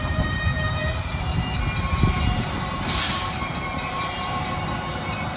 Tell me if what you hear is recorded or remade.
remade